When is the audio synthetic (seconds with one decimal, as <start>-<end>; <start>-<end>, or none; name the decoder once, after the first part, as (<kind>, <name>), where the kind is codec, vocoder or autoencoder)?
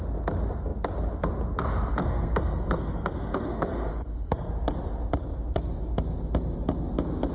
2.0-4.5 (codec, SNAC)